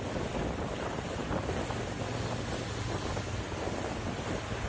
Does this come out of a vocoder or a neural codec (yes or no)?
no